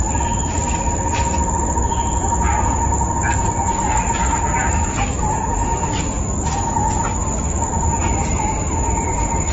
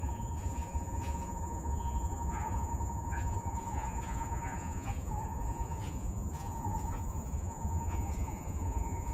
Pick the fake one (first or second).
second